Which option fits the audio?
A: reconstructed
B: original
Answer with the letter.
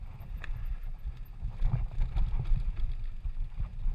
B